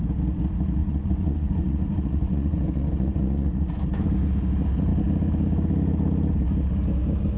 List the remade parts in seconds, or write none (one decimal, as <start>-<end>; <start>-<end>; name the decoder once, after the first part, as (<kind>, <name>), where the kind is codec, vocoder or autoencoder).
0.8-3.7 (vocoder, Vocos)